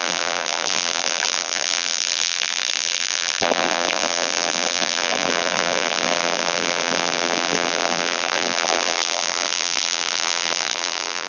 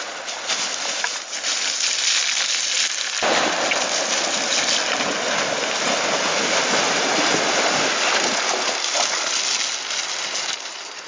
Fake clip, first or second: first